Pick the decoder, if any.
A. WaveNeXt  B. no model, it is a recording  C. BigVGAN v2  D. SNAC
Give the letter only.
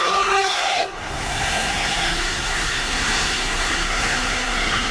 D